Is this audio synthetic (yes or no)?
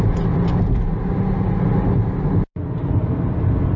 no